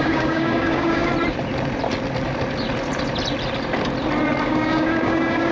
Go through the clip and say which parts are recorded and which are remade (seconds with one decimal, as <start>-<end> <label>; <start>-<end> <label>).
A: 0.0-1.1 remade; 1.1-4.4 recorded; 4.4-5.5 remade